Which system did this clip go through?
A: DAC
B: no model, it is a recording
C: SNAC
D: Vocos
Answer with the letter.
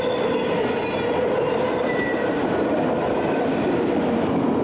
B